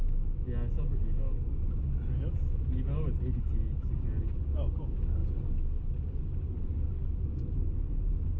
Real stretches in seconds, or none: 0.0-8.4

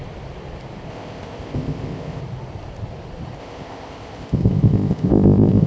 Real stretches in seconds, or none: 0.0-0.9; 2.2-3.4

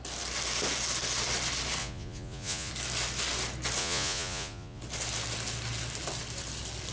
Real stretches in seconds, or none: 0.0-1.8; 2.7-3.8; 4.8-6.9

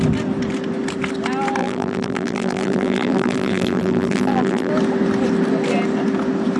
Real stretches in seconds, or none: 0.0-1.6; 4.7-6.6

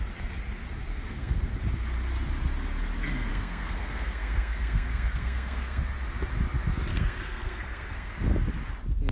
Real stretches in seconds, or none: 0.0-0.9; 1.5-3.3; 5.8-6.9; 8.1-9.1

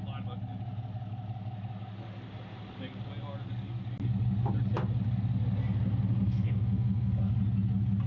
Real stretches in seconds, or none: 0.0-6.1; 7.4-8.1

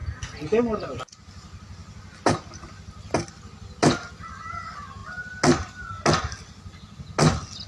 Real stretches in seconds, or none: 0.0-5.0; 5.8-7.7

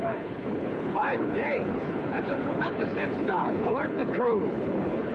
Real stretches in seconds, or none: none